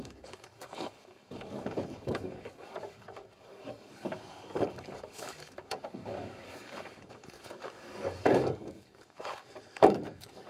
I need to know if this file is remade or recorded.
remade